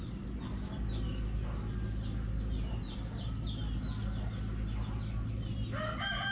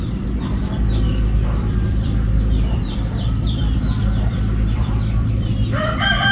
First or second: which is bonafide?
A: first